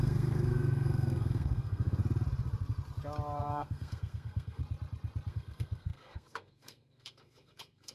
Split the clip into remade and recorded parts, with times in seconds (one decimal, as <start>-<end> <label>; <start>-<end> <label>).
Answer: 0.0-2.0 remade; 2.0-3.4 recorded; 3.4-4.6 remade; 4.6-5.3 recorded; 5.3-7.9 remade